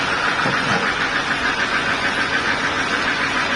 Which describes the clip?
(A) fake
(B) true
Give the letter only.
A